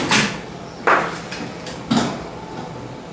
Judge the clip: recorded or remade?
recorded